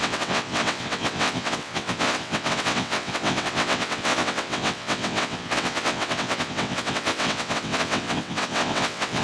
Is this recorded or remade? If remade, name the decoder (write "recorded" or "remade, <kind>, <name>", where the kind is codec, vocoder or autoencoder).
remade, vocoder, WaveNeXt